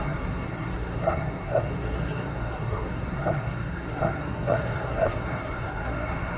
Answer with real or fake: fake